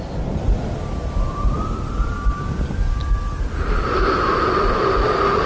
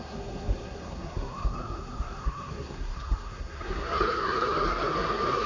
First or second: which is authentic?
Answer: first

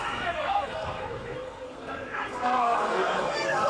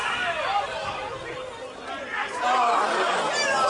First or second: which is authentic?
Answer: second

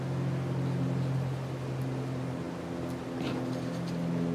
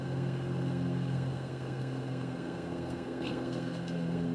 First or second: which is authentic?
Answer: first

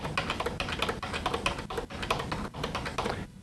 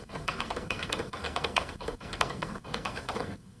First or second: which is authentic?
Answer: first